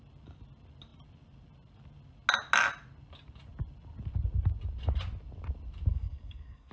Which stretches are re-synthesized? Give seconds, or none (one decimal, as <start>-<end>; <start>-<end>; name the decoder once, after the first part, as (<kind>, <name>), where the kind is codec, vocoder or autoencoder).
5.9-6.7 (codec, DAC)